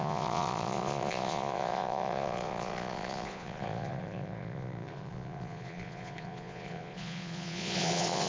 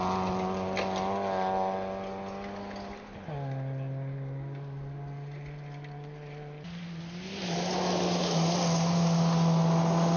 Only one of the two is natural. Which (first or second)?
second